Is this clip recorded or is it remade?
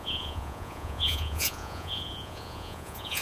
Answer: remade